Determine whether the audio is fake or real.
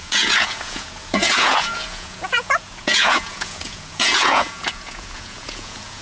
fake